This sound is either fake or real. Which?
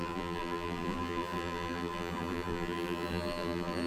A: fake